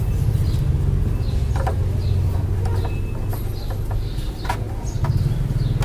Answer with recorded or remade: recorded